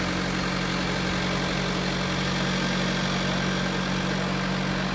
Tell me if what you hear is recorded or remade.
recorded